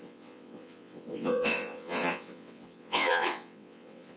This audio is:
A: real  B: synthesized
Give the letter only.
B